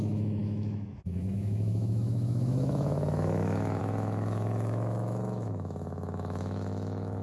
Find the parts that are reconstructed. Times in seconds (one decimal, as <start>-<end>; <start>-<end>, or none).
0.0-7.2